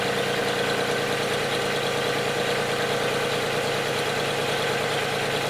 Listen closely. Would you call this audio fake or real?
real